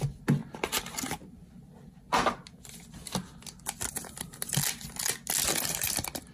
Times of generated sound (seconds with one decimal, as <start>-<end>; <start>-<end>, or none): none